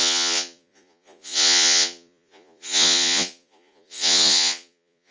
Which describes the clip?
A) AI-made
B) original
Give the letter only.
A